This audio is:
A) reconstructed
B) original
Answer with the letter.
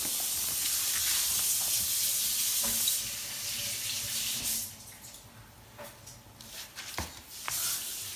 A